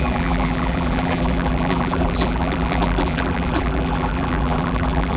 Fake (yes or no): yes